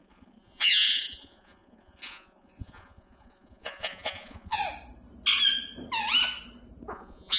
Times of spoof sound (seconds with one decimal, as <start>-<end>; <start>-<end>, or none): 0.0-4.6; 6.9-7.4